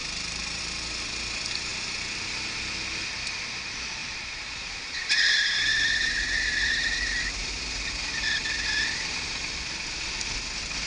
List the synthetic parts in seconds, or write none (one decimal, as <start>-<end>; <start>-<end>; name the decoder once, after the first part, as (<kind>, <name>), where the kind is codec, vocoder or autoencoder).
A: 0.0-0.6 (vocoder, BigVGAN v2); 4.0-6.5